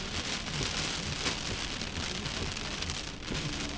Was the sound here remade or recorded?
recorded